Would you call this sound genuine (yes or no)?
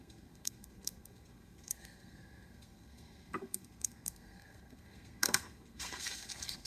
no